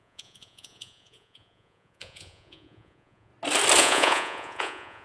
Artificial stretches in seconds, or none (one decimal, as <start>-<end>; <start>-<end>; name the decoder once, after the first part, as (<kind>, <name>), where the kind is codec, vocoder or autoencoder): 0.0-3.3 (vocoder, Vocos); 3.8-5.0